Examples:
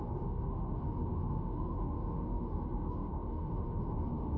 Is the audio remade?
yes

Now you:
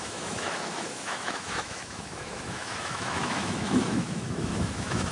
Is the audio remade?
yes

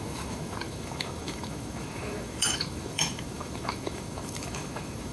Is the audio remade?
yes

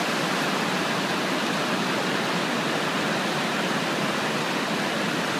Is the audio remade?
no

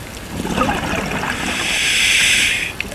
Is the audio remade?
no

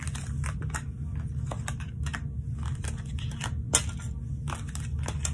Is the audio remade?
no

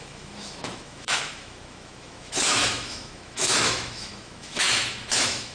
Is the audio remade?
yes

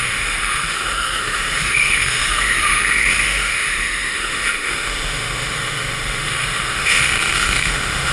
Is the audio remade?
yes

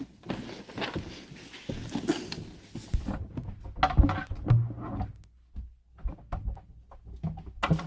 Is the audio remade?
no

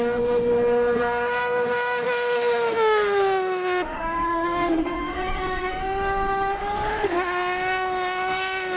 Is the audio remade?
yes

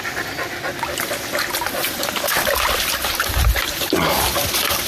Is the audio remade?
no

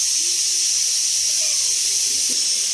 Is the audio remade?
no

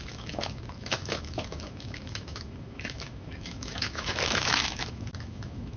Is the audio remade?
yes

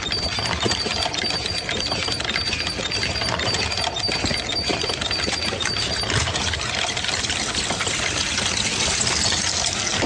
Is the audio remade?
no